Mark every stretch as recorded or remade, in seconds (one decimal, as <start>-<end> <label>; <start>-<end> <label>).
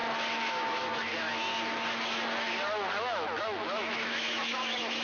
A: 0.0-0.5 recorded; 0.5-1.1 remade; 1.1-3.4 recorded; 3.4-5.0 remade